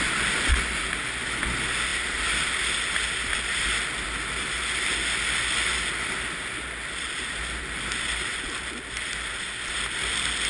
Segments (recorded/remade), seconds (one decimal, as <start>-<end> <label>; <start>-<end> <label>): 0.0-10.5 recorded